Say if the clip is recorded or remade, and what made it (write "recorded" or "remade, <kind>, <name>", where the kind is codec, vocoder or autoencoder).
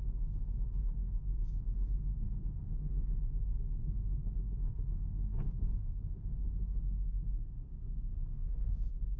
remade, codec, SNAC